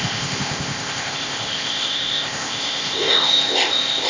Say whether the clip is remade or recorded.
remade